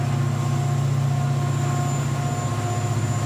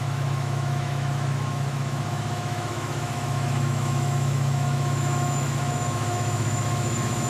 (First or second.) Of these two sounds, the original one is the first